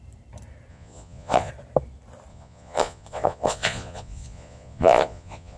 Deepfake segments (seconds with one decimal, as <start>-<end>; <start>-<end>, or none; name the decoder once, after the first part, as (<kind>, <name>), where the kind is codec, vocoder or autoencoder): 0.7-1.5 (vocoder, Vocos); 2.3-5.6